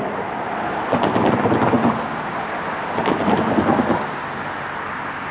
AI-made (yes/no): no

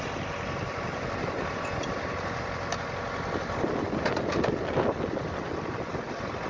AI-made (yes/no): no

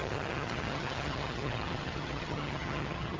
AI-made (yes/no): yes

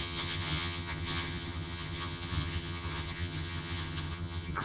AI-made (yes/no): yes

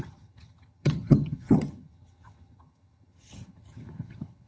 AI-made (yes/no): yes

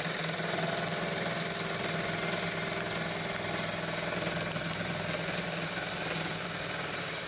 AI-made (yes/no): no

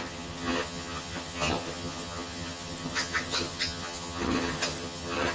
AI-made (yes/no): yes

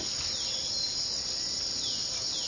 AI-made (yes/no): no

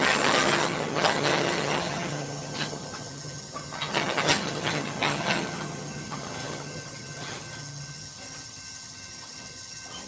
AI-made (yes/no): yes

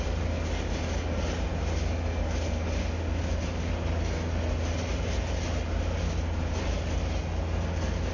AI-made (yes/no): no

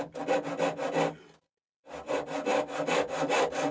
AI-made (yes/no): no